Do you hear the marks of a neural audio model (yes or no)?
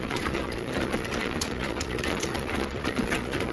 yes